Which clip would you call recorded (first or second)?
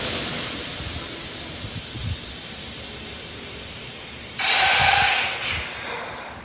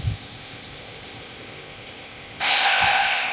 first